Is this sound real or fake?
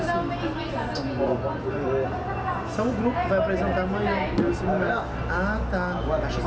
real